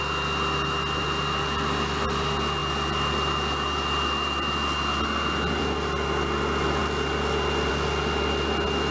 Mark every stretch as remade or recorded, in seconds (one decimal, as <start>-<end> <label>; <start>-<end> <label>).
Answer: 0.0-8.9 recorded